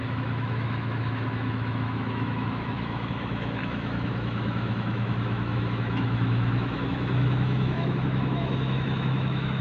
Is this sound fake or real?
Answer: fake